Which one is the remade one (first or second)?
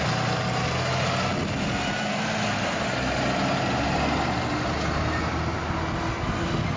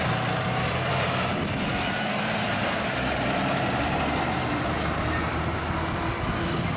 second